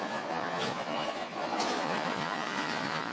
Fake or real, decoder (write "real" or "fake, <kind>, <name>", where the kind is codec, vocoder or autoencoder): fake, vocoder, Vocos